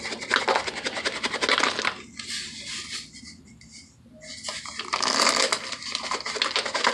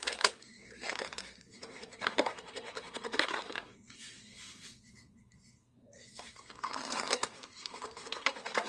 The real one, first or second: first